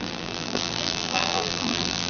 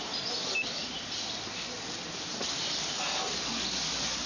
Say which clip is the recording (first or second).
second